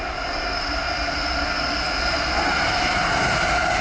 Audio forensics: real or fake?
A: real